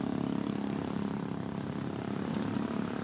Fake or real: fake